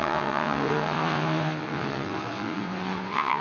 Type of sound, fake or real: fake